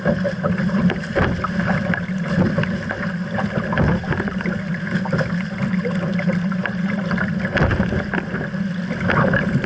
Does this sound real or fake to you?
real